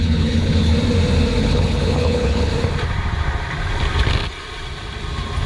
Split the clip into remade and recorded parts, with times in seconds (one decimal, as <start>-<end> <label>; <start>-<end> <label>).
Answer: 0.0-0.7 remade; 0.7-1.4 recorded; 1.4-2.5 remade; 2.5-5.5 recorded